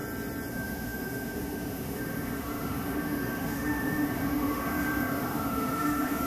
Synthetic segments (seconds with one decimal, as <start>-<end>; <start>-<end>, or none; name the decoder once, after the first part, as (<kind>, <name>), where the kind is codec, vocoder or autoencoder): 0.5-6.3 (autoencoder, DAC-VAE)